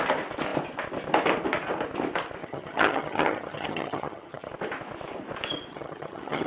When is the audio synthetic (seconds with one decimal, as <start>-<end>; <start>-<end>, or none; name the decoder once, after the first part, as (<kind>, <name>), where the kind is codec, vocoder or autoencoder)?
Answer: 2.4-4.5 (vocoder, HiFi-GAN); 5.7-6.5